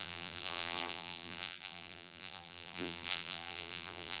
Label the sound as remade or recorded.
remade